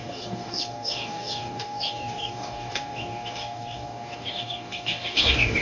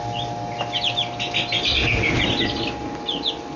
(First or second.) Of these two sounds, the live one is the second